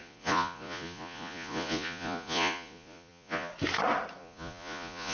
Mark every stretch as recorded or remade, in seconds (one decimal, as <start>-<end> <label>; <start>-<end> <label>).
0.0-3.5 remade; 3.5-4.2 recorded; 4.2-5.1 remade